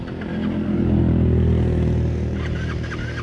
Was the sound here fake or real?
real